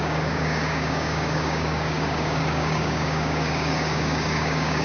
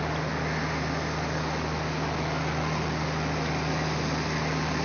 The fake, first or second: first